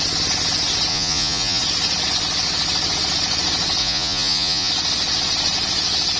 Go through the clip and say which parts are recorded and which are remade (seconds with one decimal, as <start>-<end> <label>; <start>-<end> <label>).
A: 0.0-0.9 recorded; 0.9-1.6 remade; 1.6-3.8 recorded; 3.8-4.7 remade; 4.7-6.2 recorded